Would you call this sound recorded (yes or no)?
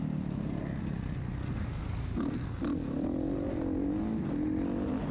yes